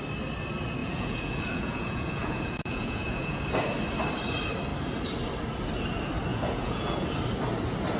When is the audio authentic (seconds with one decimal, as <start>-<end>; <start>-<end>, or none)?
0.0-0.8; 3.4-6.3; 7.1-8.0